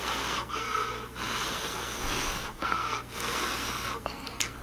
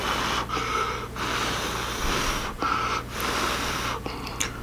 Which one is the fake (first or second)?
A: first